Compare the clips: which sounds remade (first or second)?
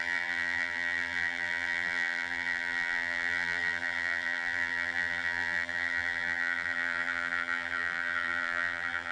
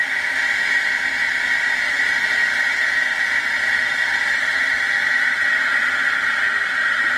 first